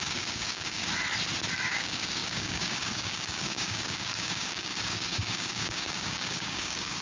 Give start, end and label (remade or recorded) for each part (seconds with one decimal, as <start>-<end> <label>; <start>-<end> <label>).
0.0-0.8 remade; 0.8-1.7 recorded; 1.7-7.0 remade